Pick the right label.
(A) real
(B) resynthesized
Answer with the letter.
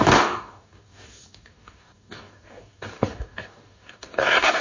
B